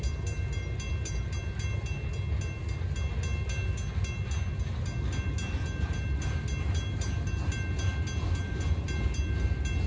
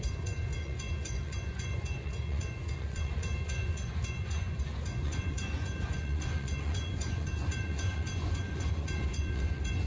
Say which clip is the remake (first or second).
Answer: second